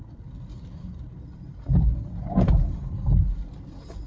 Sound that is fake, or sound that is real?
fake